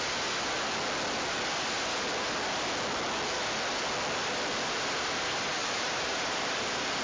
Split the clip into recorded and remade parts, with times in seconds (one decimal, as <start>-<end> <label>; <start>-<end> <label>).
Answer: 0.0-5.6 recorded; 5.6-7.0 remade

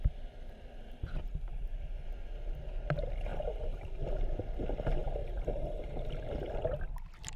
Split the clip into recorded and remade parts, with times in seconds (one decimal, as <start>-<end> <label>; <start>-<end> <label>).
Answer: 0.0-3.3 recorded; 3.3-3.9 remade; 3.9-5.2 recorded; 5.2-6.2 remade; 6.2-7.4 recorded

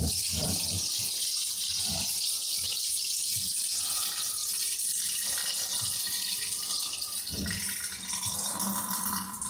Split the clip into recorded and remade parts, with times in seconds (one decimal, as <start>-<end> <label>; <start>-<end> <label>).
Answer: 0.0-4.4 remade; 4.4-5.0 recorded; 5.0-9.5 remade

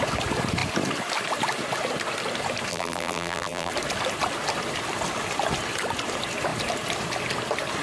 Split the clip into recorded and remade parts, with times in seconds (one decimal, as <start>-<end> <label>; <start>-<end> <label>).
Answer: 0.0-2.7 recorded; 2.7-3.7 remade; 3.7-7.8 recorded

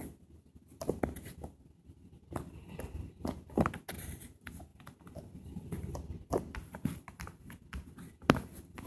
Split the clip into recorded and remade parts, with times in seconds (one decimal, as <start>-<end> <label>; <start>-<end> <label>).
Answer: 0.0-8.9 recorded

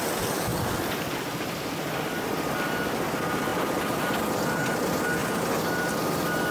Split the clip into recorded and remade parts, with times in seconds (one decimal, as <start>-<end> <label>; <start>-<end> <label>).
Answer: 0.0-6.5 recorded

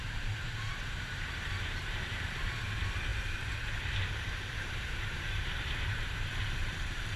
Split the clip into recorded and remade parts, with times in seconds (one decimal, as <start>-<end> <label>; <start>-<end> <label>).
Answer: 0.0-7.2 remade

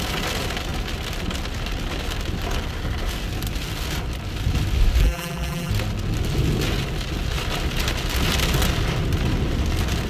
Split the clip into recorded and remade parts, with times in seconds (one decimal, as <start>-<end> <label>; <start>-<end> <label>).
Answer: 0.0-5.0 recorded; 5.0-5.7 remade; 5.7-10.1 recorded